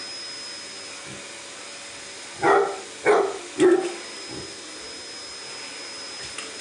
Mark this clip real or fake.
real